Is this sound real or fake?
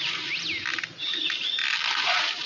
real